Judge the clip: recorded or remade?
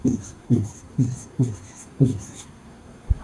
remade